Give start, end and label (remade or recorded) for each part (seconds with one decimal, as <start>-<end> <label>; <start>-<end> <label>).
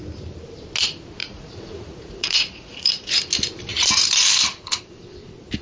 0.0-1.2 recorded; 1.2-3.1 remade; 3.1-5.6 recorded